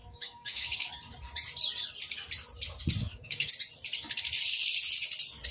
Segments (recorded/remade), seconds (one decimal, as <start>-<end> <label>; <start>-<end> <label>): 0.0-0.9 remade; 0.9-3.0 recorded; 3.0-3.5 remade; 3.5-5.5 recorded